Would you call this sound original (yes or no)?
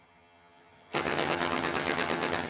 no